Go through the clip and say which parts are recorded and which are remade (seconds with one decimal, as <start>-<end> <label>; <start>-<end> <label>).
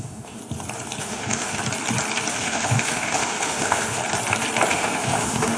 0.0-0.4 remade; 0.4-1.0 recorded; 1.0-1.6 remade; 1.6-2.3 recorded; 2.3-4.0 remade; 4.0-4.7 recorded; 4.7-5.6 remade